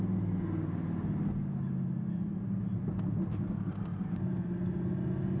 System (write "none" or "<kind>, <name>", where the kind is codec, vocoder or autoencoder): none